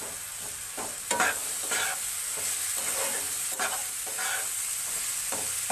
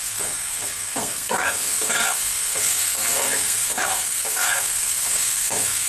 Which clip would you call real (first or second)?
first